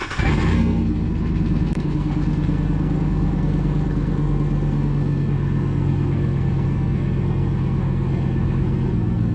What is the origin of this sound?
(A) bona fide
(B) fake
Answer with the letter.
B